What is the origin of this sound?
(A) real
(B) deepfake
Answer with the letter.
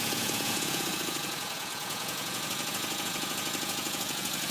B